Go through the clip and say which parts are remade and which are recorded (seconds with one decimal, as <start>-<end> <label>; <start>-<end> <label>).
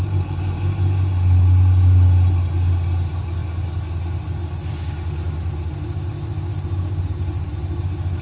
0.0-8.2 recorded